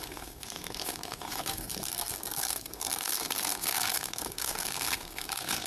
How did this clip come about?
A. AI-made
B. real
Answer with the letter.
A